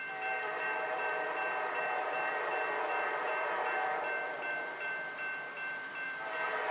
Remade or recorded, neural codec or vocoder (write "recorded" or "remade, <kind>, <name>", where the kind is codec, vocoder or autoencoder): remade, vocoder, BigVGAN v2